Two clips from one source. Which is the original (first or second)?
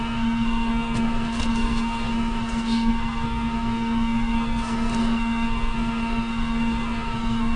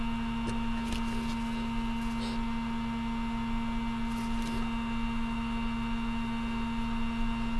second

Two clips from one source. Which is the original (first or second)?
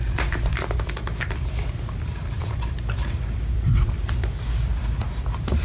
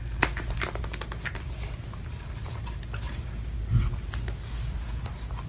second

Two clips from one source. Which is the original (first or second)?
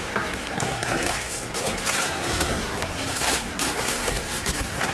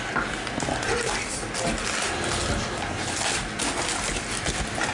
second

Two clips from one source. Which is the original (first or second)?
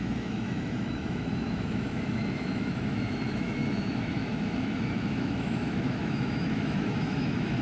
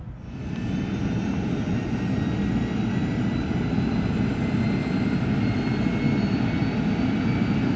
second